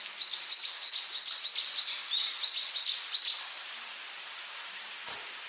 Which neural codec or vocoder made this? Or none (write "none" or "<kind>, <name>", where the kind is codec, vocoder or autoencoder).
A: none